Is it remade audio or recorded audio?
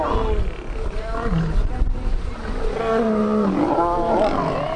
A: recorded